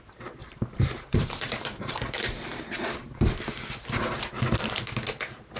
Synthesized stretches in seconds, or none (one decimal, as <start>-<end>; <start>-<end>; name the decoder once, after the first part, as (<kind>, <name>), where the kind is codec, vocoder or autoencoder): 0.4-3.4 (vocoder, BigVGAN v2)